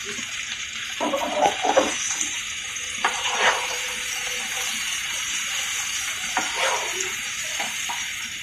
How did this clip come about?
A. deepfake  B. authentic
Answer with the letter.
A